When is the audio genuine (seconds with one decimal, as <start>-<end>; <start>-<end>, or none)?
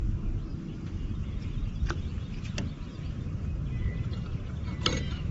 0.0-0.5; 1.5-3.0; 3.9-5.3